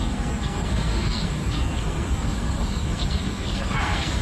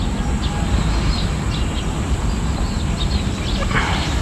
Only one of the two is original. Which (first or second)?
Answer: second